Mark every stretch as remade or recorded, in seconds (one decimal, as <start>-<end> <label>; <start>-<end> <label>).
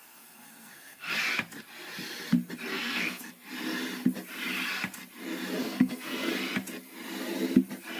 0.0-1.1 remade; 1.1-2.7 recorded; 2.7-3.3 remade; 3.3-5.6 recorded; 5.6-6.3 remade; 6.3-8.0 recorded